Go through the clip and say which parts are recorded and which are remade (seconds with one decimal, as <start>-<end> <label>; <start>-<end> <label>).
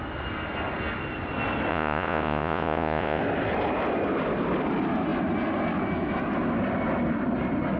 0.0-1.7 recorded; 1.7-3.2 remade; 3.2-7.8 recorded